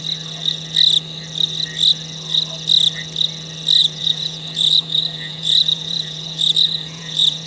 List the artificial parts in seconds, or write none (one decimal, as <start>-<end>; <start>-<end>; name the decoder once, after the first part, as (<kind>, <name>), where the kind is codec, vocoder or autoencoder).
3.8-7.5 (vocoder, Vocos)